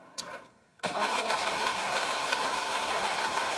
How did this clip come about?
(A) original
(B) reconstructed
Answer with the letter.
B